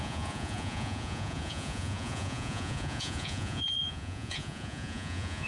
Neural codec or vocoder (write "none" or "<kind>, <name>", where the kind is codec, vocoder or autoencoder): vocoder, Vocos